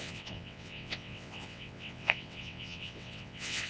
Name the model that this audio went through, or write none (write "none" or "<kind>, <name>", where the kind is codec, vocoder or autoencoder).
vocoder, WaveNeXt